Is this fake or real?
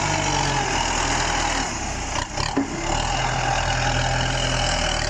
real